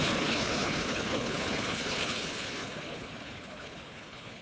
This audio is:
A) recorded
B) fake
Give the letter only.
B